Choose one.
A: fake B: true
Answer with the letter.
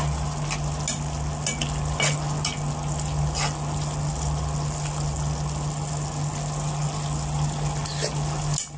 B